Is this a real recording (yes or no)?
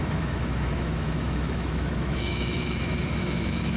no